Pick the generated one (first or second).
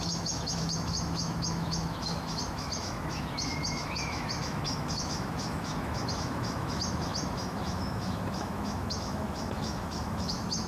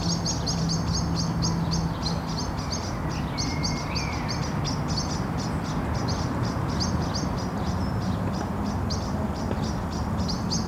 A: first